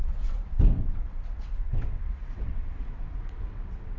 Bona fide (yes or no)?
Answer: no